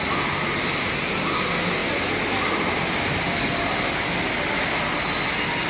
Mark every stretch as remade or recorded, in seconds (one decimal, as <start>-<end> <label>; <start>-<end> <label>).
0.0-5.7 recorded